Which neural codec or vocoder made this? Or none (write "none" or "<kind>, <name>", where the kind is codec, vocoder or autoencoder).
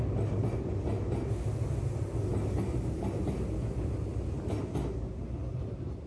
none